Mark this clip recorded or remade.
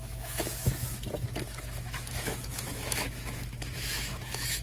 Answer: remade